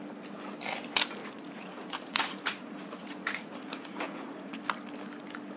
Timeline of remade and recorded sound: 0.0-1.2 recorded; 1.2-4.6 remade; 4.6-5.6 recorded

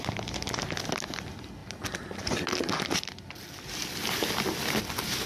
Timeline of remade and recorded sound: 0.0-5.3 recorded

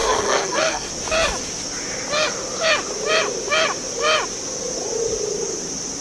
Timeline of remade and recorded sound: 0.0-0.9 remade; 0.9-6.0 recorded